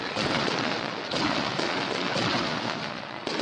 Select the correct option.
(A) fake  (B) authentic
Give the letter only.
A